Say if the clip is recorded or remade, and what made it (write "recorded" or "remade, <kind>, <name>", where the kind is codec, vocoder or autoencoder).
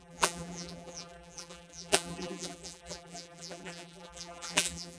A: remade, vocoder, BigVGAN v2